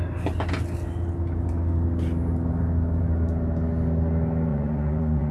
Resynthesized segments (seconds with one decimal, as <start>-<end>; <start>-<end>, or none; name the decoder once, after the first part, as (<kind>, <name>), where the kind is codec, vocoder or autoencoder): 4.5-5.3 (vocoder, Vocos)